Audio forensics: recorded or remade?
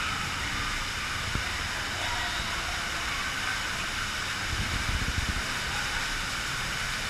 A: recorded